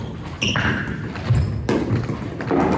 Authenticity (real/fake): real